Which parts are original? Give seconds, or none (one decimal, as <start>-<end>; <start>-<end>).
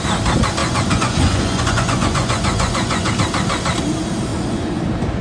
0.0-0.6; 3.1-4.3; 4.8-5.2